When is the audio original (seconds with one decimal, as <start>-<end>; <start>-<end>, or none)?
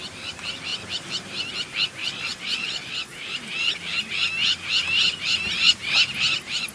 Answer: 0.0-2.0; 3.3-6.7